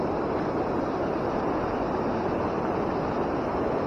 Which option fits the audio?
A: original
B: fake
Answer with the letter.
A